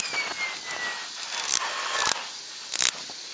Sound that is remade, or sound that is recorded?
recorded